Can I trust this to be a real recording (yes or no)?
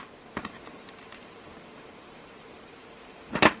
no